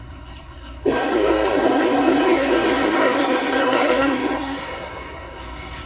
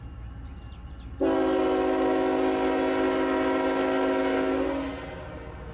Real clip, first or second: second